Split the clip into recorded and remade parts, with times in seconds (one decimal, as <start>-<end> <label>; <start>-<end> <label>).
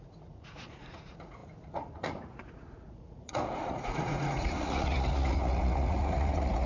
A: 0.0-6.7 remade